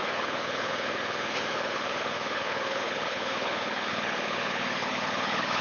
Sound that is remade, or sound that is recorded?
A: remade